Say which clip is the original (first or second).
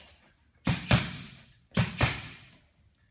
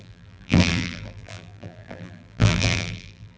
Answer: first